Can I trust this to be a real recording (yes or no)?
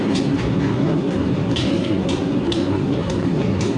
no